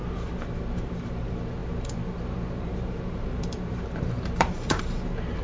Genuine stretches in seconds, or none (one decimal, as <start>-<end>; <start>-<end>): none